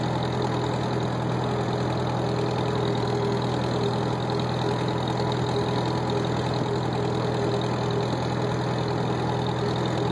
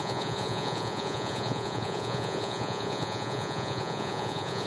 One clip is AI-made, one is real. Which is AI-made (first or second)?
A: second